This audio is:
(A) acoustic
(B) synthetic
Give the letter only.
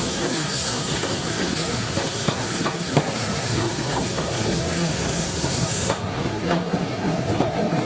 B